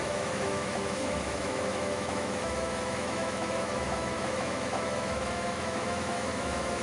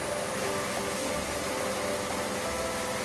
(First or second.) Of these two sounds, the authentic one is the second